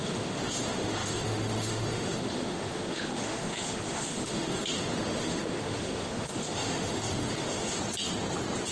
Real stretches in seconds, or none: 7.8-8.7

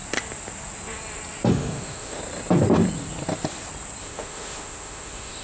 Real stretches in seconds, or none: 0.0-1.5; 2.2-4.0

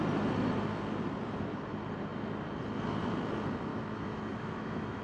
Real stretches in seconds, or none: 0.0-3.7